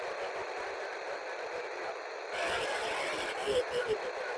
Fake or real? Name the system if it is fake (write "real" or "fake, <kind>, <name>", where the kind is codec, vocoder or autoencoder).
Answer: real